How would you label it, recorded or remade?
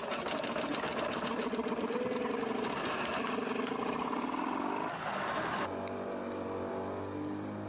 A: recorded